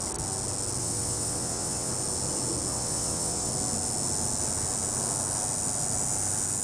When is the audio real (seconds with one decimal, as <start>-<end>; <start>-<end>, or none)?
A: 0.0-0.8; 1.9-2.7; 3.5-6.6